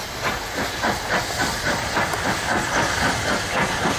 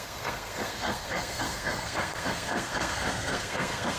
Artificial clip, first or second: second